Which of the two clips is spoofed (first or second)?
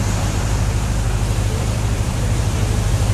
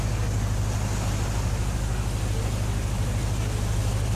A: first